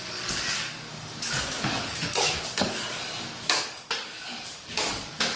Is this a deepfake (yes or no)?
yes